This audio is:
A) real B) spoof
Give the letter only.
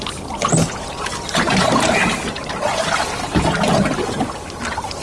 A